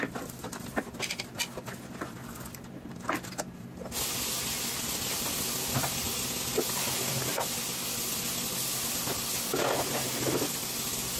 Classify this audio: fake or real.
real